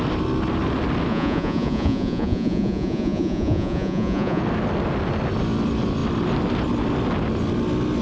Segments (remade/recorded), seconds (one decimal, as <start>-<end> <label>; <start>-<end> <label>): 0.0-1.1 recorded; 1.1-4.4 remade; 4.4-8.0 recorded